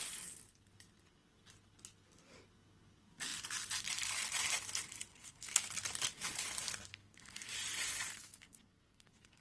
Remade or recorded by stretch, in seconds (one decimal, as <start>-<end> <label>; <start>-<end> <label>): 0.0-5.1 recorded; 5.1-5.7 remade; 5.7-6.9 recorded; 6.9-7.5 remade; 7.5-8.1 recorded; 8.1-9.4 remade